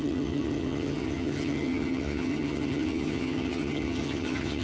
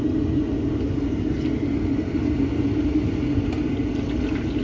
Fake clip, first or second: first